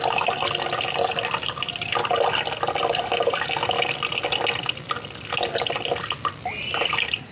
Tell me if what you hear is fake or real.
real